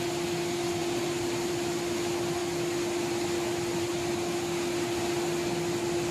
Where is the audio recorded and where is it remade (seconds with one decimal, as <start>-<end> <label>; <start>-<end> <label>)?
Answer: 0.0-6.1 recorded